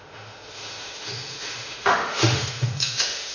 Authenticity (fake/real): fake